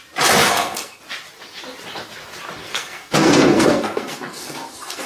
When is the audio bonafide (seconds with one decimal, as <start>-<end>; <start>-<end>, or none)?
0.0-0.4; 1.0-2.6